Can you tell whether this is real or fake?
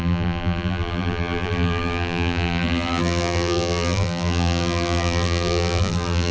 fake